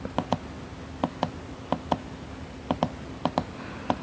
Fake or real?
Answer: real